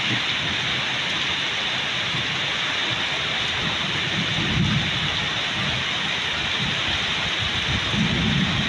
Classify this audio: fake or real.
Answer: real